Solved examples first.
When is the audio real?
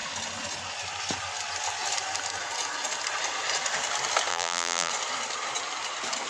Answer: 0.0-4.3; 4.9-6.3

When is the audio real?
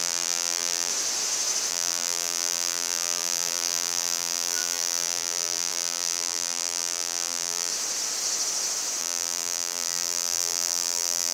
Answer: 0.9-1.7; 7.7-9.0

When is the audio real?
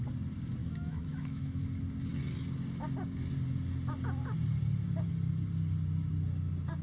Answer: 0.0-0.6; 1.6-6.8